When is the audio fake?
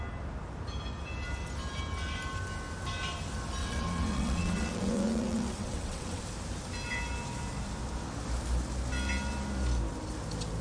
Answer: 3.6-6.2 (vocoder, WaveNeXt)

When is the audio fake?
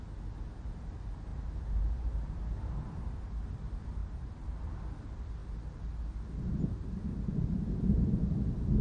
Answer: 1.3-2.4 (vocoder, BigVGAN v2); 4.0-4.7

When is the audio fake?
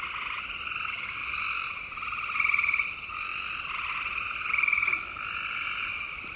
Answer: 0.0-6.4 (vocoder, BigVGAN v2)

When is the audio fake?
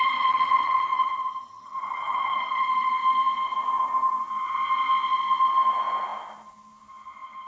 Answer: 0.0-3.0 (vocoder, HiFi-GAN)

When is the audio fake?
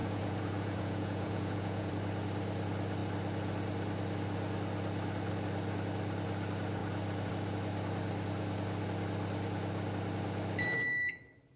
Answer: 0.0-1.9 (vocoder, Vocos)